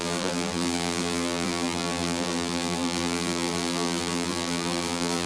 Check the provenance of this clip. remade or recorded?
remade